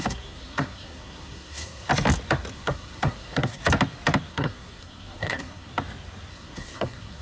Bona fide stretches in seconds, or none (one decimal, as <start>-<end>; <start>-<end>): 1.9-2.5; 3.6-4.3; 5.7-6.3